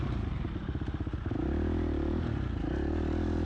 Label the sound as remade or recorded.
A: recorded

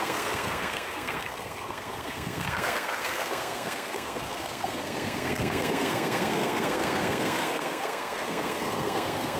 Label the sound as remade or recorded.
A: remade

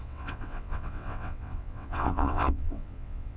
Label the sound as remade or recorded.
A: remade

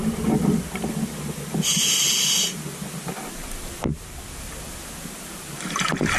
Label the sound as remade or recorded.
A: recorded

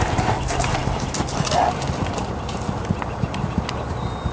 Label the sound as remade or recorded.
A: recorded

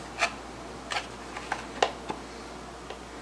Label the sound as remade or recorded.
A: recorded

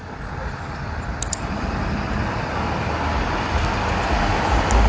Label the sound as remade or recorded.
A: recorded